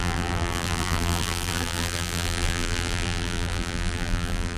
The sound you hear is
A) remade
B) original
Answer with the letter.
A